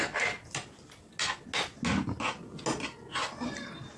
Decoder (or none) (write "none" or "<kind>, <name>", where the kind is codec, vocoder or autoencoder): none